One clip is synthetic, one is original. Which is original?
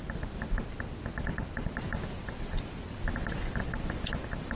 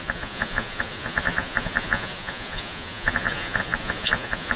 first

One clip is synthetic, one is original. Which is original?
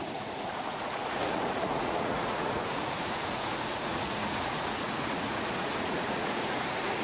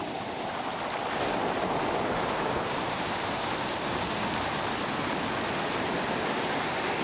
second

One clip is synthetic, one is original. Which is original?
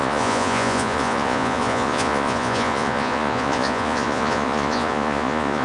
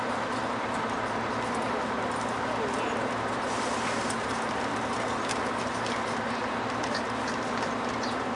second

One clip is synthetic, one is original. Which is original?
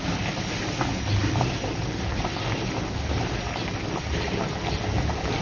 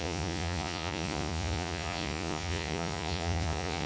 first